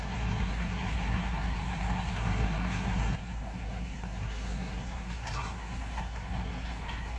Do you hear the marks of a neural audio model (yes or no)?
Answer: yes